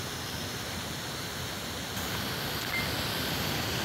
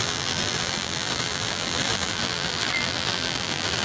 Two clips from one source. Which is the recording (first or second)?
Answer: first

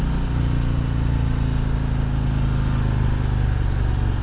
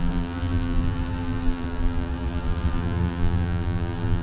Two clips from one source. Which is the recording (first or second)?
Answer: first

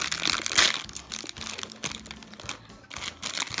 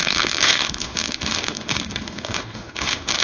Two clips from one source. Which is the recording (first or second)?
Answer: first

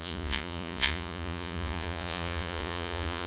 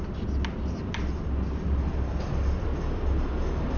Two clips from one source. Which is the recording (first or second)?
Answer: second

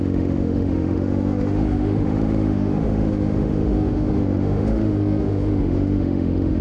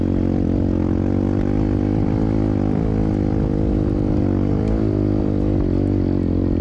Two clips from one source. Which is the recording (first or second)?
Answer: second